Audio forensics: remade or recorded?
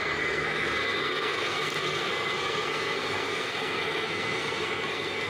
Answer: remade